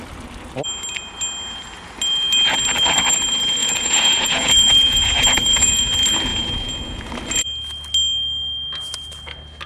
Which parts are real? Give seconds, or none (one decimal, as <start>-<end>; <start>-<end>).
0.0-3.6; 5.8-6.3; 7.1-9.7